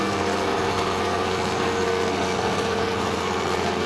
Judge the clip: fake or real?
fake